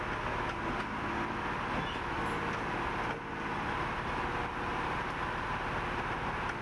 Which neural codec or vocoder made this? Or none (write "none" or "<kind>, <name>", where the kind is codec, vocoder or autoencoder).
none